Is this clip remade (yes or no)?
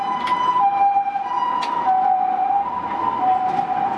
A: no